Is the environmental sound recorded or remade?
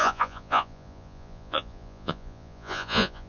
remade